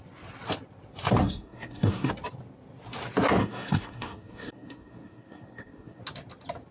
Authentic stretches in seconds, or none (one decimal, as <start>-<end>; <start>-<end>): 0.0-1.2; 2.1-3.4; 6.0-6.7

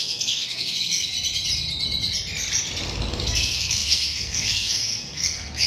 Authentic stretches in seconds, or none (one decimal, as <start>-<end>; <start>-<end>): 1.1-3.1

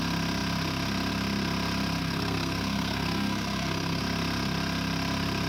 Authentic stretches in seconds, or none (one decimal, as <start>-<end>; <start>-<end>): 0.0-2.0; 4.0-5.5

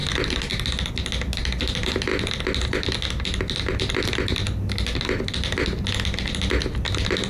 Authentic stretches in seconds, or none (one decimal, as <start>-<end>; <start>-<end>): 0.0-7.3

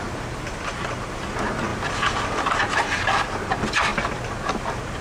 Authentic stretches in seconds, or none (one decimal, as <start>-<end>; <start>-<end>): 0.0-5.0